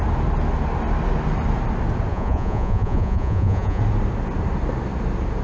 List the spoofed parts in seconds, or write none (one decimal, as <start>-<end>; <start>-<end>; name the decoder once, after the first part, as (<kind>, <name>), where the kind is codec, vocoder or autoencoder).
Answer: 2.1-3.8 (vocoder, Vocos)